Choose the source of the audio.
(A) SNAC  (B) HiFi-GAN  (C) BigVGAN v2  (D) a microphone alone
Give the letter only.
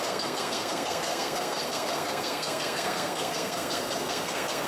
A